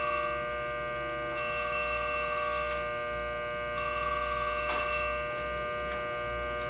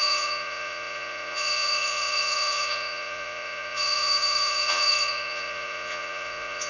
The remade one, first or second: second